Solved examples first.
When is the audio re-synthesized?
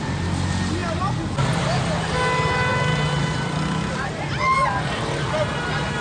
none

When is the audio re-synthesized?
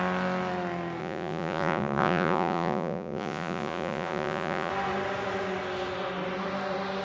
1.0-4.7 (vocoder, Vocos)